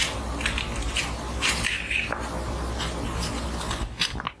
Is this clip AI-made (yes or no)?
no